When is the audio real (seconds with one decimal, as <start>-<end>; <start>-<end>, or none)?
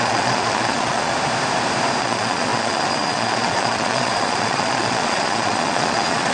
1.1-2.0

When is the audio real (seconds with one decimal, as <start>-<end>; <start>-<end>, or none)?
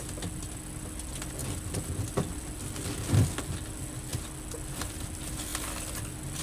0.0-6.4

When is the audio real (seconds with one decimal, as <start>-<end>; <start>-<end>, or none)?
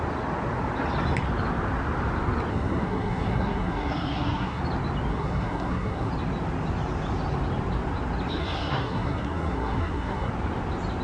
0.0-2.5; 4.6-5.1; 6.1-8.4; 10.3-11.0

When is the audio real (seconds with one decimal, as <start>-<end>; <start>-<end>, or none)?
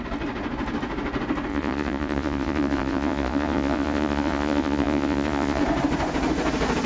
0.0-1.5; 5.6-6.9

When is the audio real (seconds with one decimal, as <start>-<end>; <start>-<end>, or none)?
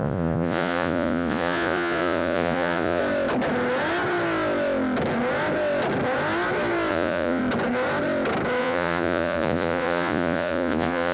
3.0-6.9; 7.4-8.6